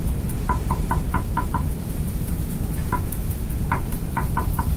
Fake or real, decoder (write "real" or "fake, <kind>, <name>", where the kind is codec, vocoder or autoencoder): fake, vocoder, BigVGAN v2